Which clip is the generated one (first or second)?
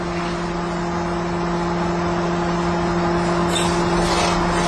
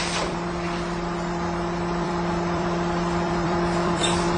second